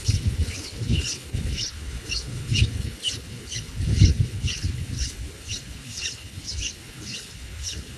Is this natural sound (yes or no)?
no